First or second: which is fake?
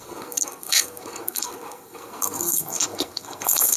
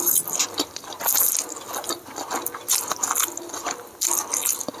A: first